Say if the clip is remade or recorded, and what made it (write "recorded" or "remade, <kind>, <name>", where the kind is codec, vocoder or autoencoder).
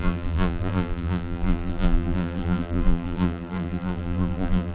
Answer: remade, vocoder, BigVGAN v2